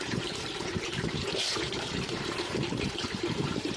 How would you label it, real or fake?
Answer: fake